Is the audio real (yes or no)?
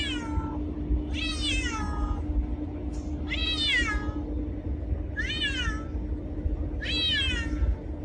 yes